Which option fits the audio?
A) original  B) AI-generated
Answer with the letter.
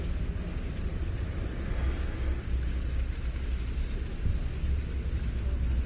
A